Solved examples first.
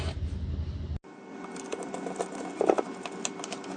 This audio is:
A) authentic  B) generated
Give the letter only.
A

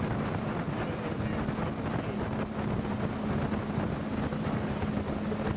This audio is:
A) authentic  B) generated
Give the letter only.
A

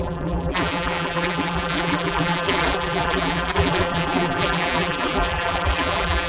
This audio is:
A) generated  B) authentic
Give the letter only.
A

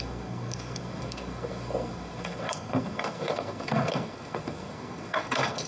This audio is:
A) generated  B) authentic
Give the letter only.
A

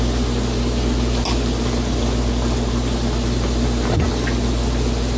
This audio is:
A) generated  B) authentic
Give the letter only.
B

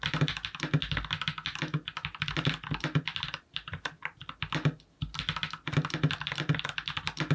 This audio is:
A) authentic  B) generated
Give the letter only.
A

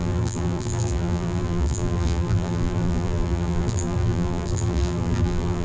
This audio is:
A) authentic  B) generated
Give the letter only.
B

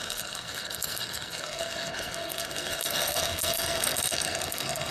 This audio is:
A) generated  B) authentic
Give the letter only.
A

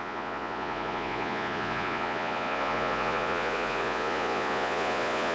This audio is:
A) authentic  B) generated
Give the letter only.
B